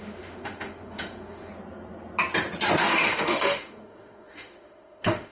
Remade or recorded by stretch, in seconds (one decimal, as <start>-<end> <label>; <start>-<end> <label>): 0.0-1.5 remade; 1.5-2.8 recorded; 2.8-5.3 remade